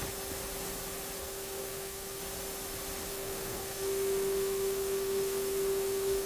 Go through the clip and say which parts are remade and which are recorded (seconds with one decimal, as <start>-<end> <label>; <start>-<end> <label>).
0.0-1.2 recorded; 1.2-2.2 remade; 2.2-3.1 recorded; 3.1-6.3 remade